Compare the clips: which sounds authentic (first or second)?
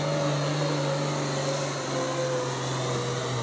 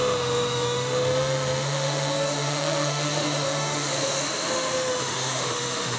first